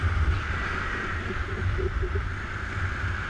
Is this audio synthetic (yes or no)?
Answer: no